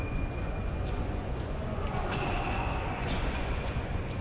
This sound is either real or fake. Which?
fake